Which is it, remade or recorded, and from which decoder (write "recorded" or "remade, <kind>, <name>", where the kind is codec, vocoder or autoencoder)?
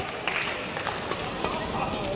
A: recorded